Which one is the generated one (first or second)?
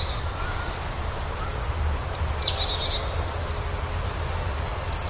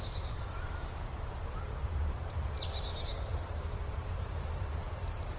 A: second